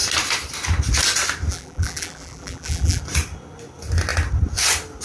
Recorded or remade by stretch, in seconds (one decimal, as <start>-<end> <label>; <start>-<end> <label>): 0.0-1.5 recorded; 1.5-3.0 remade; 3.0-5.0 recorded